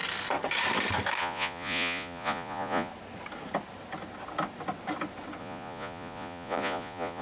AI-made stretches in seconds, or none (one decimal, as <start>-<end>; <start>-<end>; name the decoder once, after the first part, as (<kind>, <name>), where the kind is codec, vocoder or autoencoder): 1.2-2.9 (vocoder, Vocos); 5.4-7.2